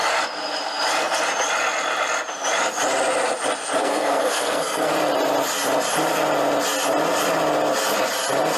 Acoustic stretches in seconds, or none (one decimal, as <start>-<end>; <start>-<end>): 0.0-3.8; 4.9-8.6